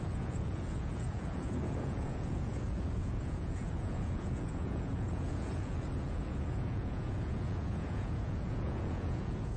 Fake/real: fake